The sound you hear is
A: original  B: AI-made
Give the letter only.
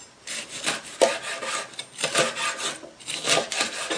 A